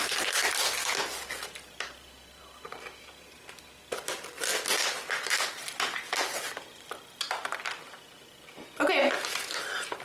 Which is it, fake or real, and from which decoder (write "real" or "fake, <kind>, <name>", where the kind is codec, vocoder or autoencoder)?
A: real